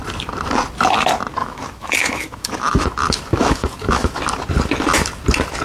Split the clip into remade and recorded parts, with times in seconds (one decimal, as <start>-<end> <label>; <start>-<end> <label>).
0.0-1.4 recorded; 1.4-4.2 remade; 4.2-5.6 recorded